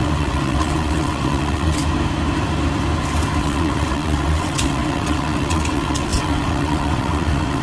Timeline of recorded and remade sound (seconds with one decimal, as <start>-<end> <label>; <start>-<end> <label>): 0.0-1.8 remade; 1.8-3.4 recorded; 3.4-7.6 remade